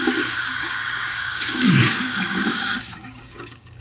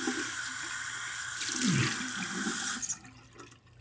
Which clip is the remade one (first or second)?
first